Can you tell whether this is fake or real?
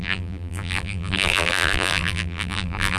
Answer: fake